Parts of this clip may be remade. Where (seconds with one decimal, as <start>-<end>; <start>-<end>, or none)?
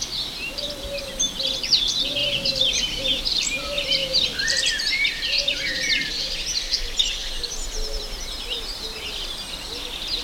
2.2-3.2; 4.0-6.1; 7.2-8.8